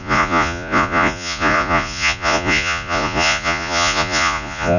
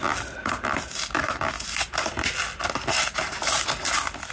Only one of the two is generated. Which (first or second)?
first